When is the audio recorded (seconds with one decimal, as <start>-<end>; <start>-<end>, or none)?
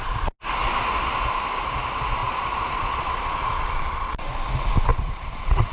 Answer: 0.0-2.2; 4.2-4.9